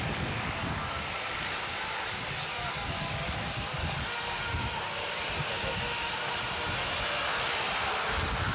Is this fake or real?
real